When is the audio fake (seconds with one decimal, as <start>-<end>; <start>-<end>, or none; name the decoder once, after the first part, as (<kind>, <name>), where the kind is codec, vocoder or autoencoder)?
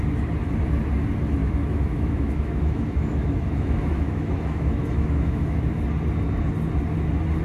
1.4-5.8 (autoencoder, DAC-VAE)